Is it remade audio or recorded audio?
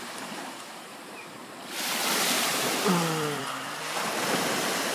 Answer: remade